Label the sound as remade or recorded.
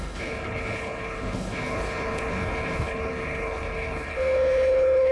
remade